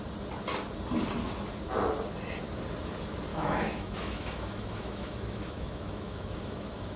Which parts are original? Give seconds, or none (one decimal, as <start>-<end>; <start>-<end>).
0.0-3.3